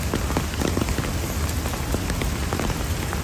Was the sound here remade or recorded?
recorded